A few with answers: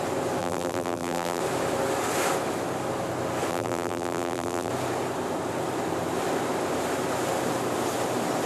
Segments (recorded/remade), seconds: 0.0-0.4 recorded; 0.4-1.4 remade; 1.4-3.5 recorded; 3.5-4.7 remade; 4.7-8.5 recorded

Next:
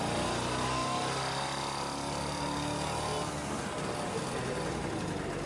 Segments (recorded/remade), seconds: 0.0-5.5 recorded

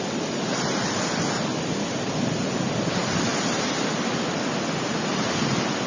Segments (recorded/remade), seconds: 0.0-0.5 recorded; 0.5-2.3 remade; 2.3-3.0 recorded; 3.0-5.9 remade

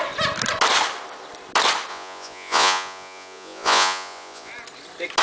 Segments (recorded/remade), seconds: 0.0-1.9 recorded; 1.9-4.5 remade; 4.5-5.2 recorded

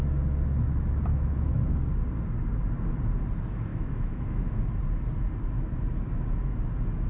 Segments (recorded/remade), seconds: 0.0-1.1 recorded; 1.1-1.8 remade; 1.8-3.7 recorded; 3.7-4.6 remade; 4.6-7.1 recorded

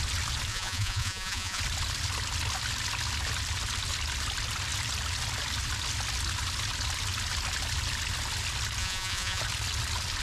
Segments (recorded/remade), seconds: 0.0-0.5 recorded; 0.5-1.6 remade; 1.6-8.8 recorded; 8.8-9.4 remade; 9.4-10.2 recorded

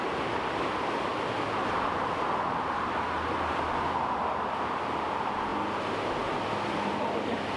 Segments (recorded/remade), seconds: 0.0-7.6 recorded